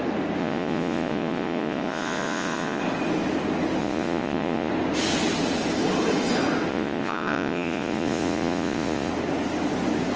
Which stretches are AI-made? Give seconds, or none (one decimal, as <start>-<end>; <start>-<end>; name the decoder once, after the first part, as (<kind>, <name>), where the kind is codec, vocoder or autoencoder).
0.4-2.8 (vocoder, Vocos); 3.8-4.7; 6.7-9.1